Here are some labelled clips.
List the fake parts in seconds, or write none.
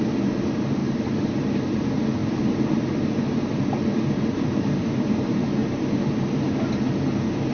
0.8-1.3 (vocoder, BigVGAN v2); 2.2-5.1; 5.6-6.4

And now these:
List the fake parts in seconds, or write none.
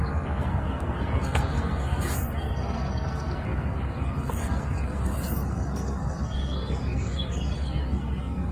0.0-8.5 (codec, SNAC)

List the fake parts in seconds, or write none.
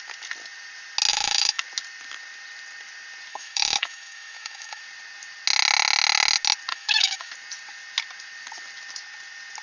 1.1-1.6 (autoencoder, DAC-VAE); 3.3-4.8; 6.7-7.3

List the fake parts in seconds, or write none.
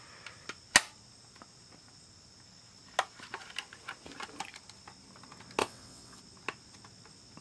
5.6-6.2 (vocoder, WaveNeXt)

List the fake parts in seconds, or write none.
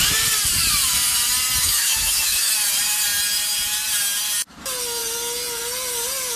1.6-2.5 (autoencoder, DAC-VAE)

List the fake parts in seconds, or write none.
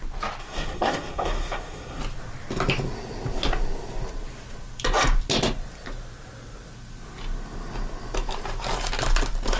0.4-2.0 (codec, SNAC)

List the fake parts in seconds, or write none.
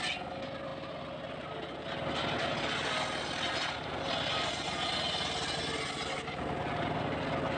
none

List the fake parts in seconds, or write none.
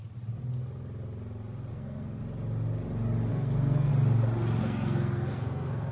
1.7-2.2 (codec, SNAC); 3.3-3.9; 4.6-5.9